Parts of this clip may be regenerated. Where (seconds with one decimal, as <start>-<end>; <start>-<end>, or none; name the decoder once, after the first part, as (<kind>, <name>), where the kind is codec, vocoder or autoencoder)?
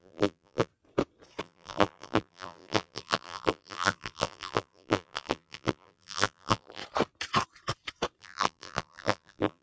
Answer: 0.0-0.7 (vocoder, BigVGAN v2); 1.4-6.8; 8.2-9.6